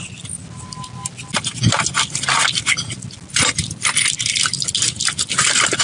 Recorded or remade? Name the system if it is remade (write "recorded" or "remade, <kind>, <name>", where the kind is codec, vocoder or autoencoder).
recorded